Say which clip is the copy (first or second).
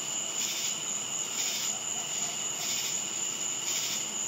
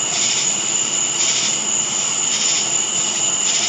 second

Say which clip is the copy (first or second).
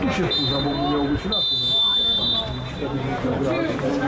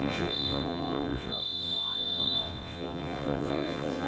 second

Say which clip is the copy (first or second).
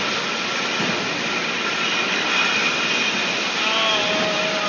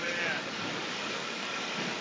second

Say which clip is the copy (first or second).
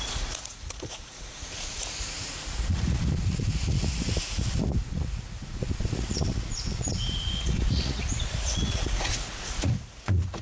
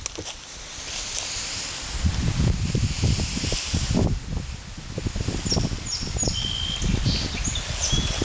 first